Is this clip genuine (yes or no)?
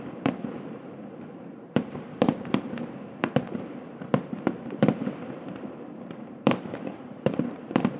no